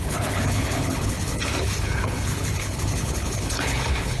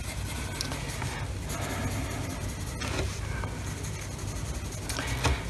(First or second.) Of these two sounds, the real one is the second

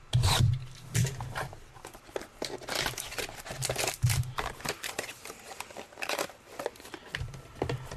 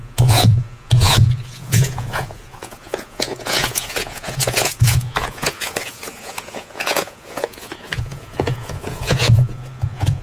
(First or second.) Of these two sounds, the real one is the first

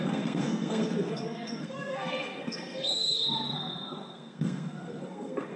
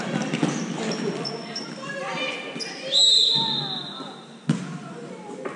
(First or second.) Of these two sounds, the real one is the second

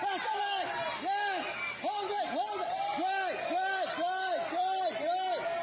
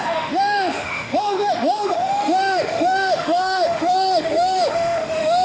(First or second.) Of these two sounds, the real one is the first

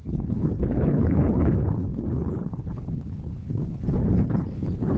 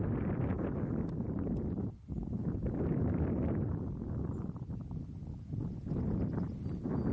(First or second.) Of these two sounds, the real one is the second